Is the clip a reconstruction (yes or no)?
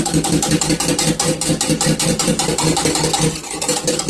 no